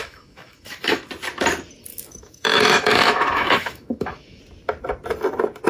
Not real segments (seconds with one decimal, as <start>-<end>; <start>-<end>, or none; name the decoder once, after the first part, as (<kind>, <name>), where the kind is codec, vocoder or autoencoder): 0.0-1.1 (autoencoder, DAC-VAE); 1.9-4.4